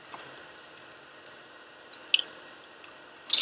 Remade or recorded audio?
recorded